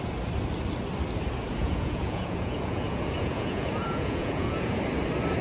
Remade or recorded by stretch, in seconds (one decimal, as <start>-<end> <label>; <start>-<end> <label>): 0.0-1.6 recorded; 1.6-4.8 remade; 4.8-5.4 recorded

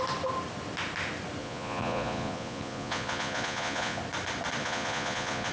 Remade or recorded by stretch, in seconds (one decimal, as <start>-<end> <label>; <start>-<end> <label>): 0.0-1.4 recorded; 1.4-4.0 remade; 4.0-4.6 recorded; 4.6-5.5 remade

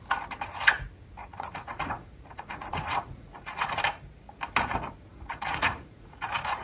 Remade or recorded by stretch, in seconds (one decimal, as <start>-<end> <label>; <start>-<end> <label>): 0.0-1.2 recorded; 1.2-3.8 remade; 3.8-5.1 recorded; 5.1-6.6 remade